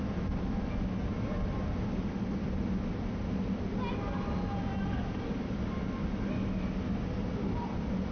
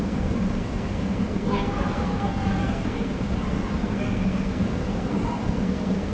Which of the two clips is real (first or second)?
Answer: first